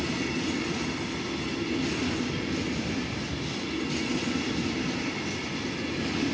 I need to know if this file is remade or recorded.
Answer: recorded